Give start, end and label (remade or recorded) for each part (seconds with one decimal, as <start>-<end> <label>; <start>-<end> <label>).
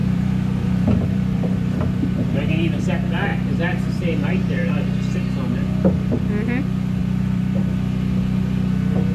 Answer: 0.0-2.8 remade; 2.8-3.3 recorded; 3.3-4.7 remade; 4.7-7.0 recorded; 7.0-7.6 remade; 7.6-9.1 recorded